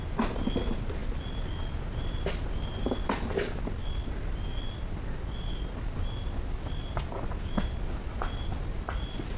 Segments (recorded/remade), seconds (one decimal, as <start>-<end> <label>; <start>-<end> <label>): 0.0-9.4 recorded